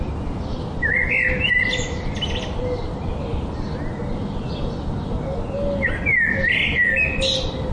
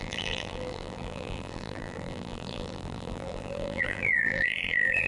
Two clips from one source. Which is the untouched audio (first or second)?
first